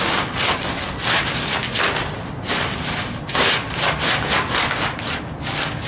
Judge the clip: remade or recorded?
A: recorded